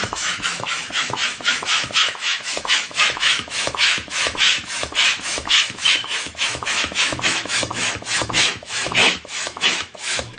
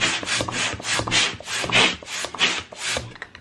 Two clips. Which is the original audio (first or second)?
second